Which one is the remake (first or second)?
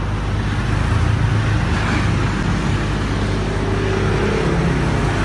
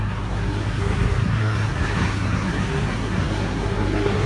second